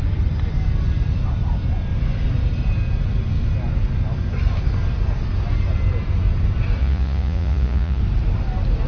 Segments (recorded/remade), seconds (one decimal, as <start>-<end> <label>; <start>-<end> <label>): 0.0-6.8 recorded; 6.8-8.0 remade; 8.0-8.9 recorded